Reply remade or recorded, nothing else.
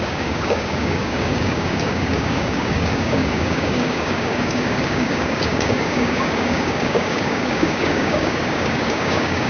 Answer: remade